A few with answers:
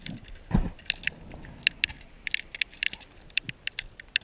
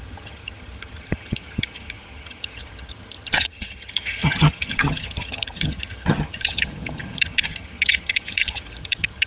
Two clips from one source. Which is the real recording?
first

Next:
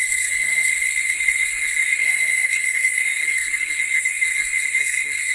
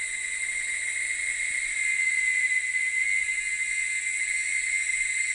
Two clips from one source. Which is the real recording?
second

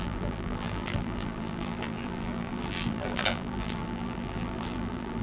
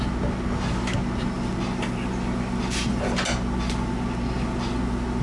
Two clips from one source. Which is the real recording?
second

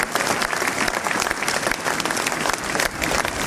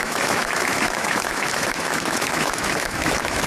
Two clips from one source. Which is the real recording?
first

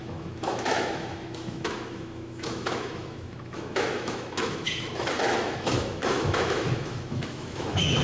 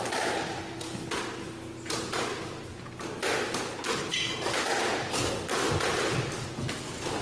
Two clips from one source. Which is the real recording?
second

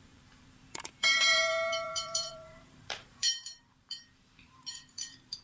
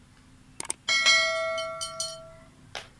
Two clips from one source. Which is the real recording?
second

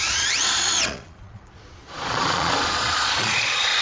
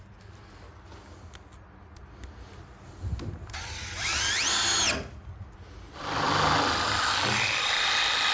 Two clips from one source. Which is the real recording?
second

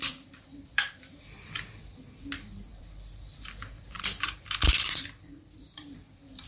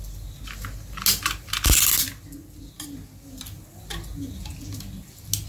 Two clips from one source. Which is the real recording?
second